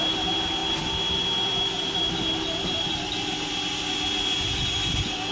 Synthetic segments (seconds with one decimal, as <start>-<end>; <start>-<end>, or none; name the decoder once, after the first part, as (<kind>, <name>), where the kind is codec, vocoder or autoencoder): none